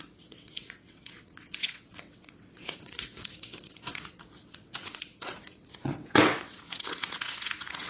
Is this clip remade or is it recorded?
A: remade